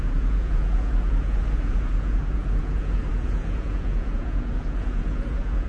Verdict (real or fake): fake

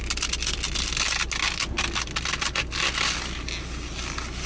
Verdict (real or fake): real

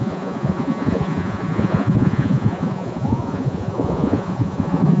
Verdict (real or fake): fake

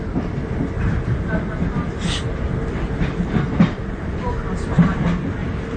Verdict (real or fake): real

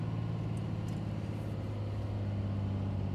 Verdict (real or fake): real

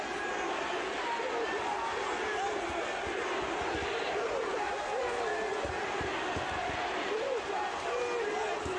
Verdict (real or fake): real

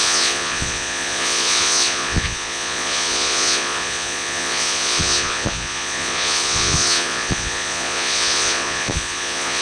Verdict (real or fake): fake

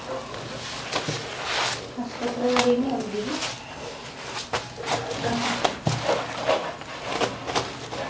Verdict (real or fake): real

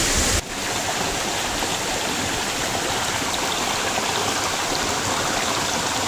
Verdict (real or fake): real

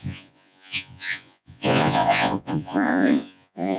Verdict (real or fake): fake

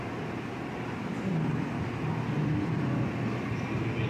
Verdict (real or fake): real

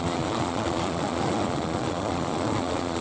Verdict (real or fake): fake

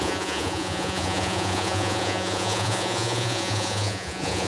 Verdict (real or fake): fake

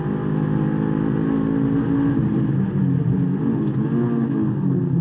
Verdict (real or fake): real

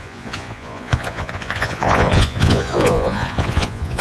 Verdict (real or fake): fake